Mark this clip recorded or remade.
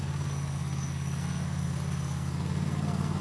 remade